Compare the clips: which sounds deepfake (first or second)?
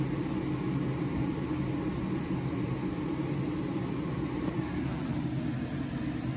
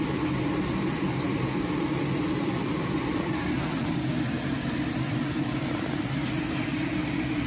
second